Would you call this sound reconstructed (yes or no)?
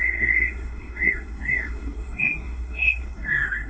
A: yes